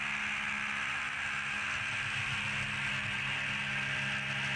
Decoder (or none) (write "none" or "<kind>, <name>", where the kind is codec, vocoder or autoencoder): none